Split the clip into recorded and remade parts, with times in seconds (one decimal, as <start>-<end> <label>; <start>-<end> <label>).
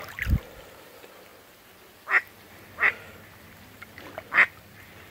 0.0-5.1 recorded